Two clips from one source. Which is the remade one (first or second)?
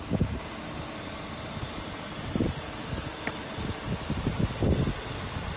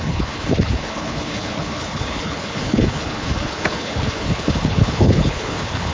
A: second